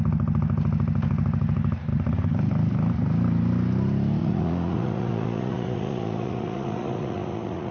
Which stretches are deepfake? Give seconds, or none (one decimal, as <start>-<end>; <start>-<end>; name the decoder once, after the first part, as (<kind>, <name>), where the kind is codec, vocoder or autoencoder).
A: 4.2-7.7 (vocoder, Vocos)